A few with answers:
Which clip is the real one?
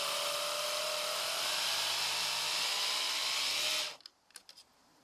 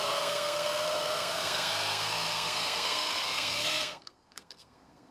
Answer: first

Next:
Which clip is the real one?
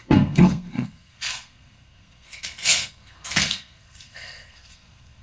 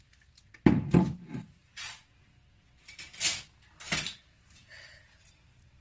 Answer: second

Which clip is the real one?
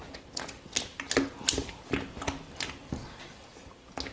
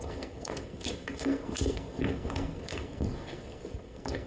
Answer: first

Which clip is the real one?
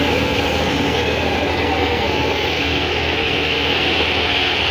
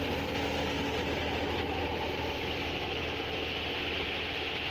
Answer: second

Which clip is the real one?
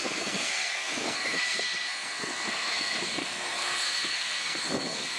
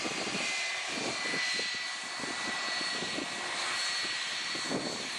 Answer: second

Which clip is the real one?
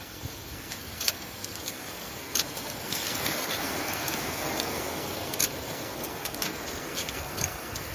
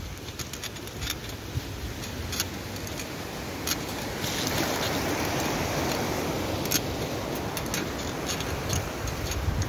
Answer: second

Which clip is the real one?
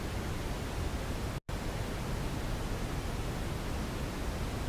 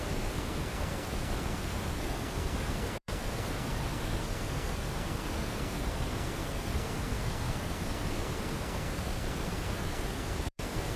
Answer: first